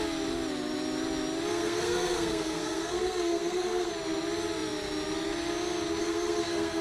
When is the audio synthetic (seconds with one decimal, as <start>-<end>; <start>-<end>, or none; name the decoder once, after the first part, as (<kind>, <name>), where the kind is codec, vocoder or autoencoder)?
1.5-3.9 (codec, SNAC); 6.0-6.8